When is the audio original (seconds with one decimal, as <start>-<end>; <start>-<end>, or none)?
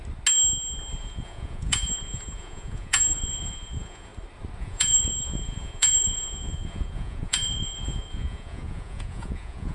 0.0-1.0; 4.1-4.6